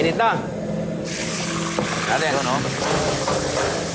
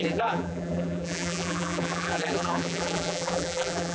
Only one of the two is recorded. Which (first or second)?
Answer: first